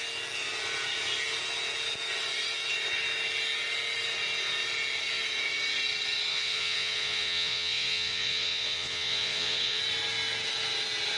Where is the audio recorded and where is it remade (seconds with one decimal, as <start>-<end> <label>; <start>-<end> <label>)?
0.0-6.3 recorded; 6.3-9.8 remade; 9.8-11.2 recorded